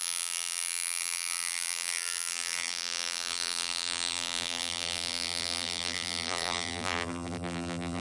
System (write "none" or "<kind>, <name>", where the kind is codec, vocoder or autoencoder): vocoder, BigVGAN v2